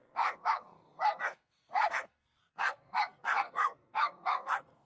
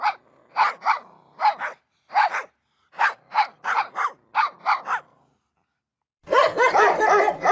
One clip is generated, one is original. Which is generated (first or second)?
first